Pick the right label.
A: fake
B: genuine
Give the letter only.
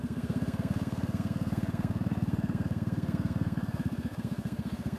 A